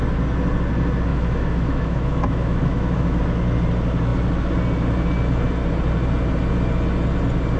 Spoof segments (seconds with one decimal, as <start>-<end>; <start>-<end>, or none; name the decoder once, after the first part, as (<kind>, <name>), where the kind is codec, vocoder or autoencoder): 1.1-3.2 (autoencoder, DAC-VAE)